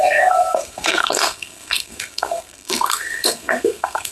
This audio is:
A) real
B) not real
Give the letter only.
B